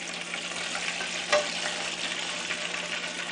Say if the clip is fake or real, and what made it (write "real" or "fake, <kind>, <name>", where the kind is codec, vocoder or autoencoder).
real